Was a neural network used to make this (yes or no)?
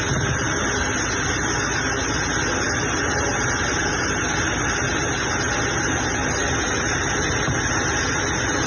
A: no